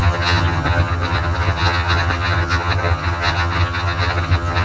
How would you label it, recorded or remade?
remade